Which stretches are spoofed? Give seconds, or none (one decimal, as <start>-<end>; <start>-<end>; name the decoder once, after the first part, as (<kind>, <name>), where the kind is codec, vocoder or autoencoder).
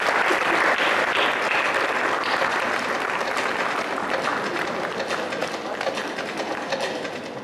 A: none